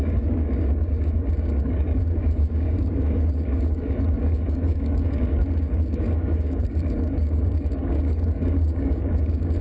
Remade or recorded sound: remade